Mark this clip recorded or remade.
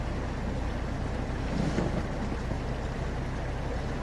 recorded